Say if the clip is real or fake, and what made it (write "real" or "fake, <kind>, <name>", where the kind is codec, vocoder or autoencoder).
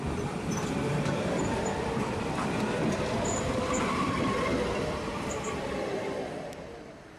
fake, vocoder, BigVGAN v2